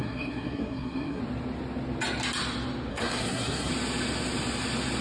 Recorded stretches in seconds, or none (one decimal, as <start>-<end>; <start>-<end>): 1.2-2.9; 3.7-5.0